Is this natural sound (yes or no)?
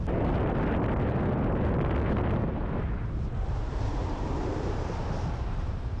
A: yes